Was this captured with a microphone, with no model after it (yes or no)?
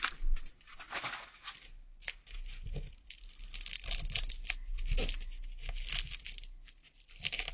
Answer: yes